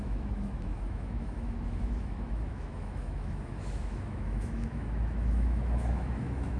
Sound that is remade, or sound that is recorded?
remade